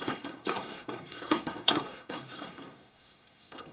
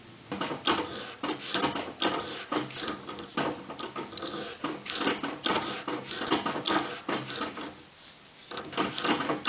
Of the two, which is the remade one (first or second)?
first